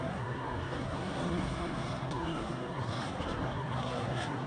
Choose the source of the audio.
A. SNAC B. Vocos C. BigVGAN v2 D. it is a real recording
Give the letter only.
A